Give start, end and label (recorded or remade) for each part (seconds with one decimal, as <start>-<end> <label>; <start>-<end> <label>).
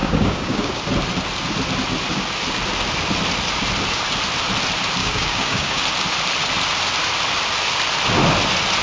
0.0-0.8 remade; 0.8-5.0 recorded; 5.0-5.8 remade; 5.8-8.8 recorded